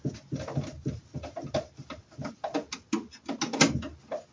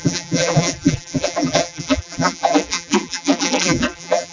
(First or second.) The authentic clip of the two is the first